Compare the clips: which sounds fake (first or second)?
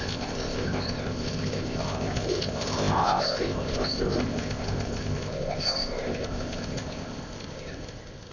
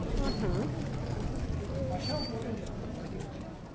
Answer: first